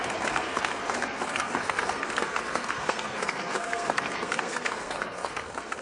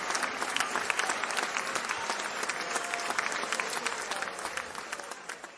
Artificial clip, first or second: first